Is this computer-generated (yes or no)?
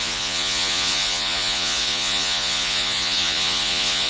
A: yes